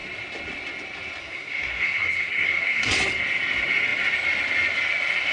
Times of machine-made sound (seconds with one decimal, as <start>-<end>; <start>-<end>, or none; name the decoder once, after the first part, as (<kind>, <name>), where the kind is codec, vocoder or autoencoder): 1.2-2.9 (codec, SNAC)